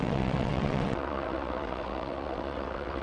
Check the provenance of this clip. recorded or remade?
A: remade